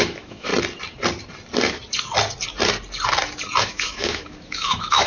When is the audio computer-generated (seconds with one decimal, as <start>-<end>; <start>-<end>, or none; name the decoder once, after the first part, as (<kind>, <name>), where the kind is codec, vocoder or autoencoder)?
0.0-0.5 (autoencoder, DAC-VAE); 3.6-5.1

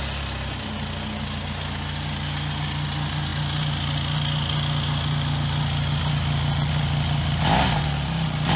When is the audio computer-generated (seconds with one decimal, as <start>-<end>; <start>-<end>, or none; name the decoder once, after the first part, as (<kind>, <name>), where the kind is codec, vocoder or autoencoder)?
none

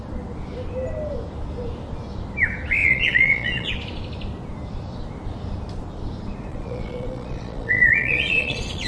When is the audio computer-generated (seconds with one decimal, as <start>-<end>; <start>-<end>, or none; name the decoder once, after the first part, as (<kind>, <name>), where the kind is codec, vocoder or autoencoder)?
2.8-3.7 (vocoder, Vocos); 6.5-8.9

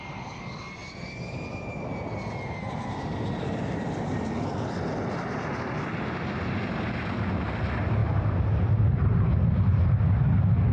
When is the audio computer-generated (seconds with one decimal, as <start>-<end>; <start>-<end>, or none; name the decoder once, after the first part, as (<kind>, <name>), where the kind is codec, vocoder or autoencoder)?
none

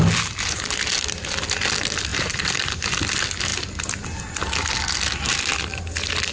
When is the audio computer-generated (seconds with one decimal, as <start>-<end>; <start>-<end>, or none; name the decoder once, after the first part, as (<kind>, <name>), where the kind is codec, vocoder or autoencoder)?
2.1-2.7 (vocoder, BigVGAN v2)

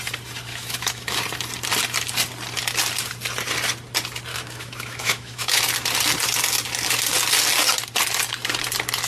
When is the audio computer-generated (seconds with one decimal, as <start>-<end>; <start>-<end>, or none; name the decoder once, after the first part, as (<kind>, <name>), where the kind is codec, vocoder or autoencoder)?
0.5-1.2 (autoencoder, DAC-VAE); 4.3-5.6